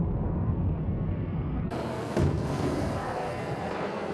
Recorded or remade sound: remade